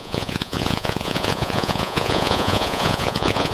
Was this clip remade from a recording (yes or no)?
yes